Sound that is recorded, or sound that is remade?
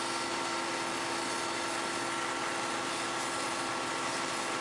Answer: recorded